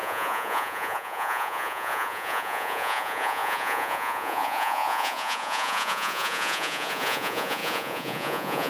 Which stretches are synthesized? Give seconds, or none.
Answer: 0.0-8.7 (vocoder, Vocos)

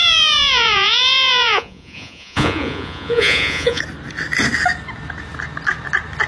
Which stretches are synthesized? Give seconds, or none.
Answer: 0.0-3.8 (vocoder, Vocos)

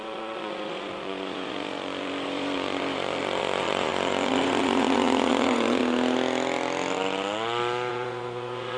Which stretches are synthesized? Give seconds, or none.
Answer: 0.0-5.8 (vocoder, Vocos); 7.9-8.8

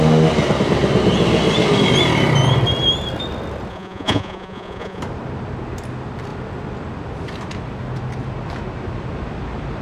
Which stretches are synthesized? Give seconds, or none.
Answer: 3.7-5.0 (vocoder, Vocos)

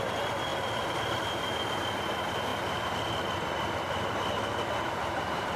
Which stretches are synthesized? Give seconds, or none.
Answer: none

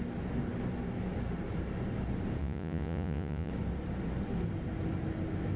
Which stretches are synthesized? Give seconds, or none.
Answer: 2.4-3.5 (vocoder, Vocos)

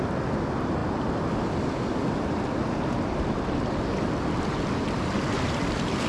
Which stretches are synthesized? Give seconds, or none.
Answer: none